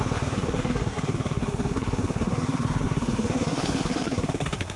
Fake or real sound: fake